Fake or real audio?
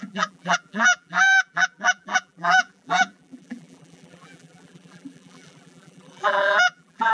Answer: fake